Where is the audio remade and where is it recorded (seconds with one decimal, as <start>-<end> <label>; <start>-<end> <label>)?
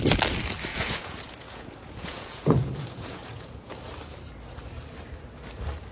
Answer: 0.0-0.7 recorded; 0.7-3.8 remade; 3.8-5.9 recorded